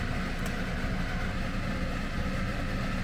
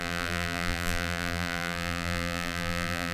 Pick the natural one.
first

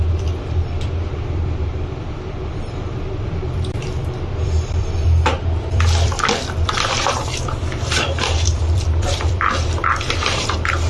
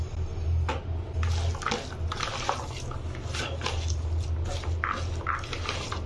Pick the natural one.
second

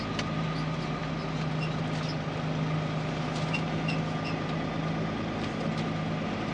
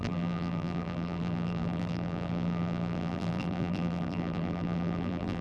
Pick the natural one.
first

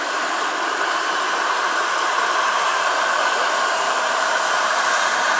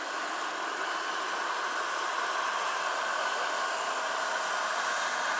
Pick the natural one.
second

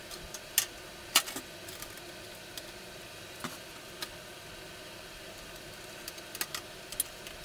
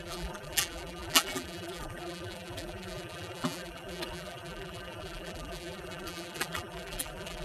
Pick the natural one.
first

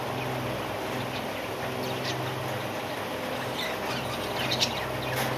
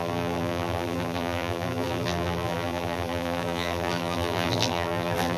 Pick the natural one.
first